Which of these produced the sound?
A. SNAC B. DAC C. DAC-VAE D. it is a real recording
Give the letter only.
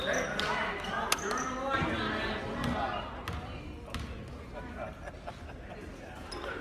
D